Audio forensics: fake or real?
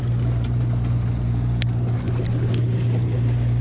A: real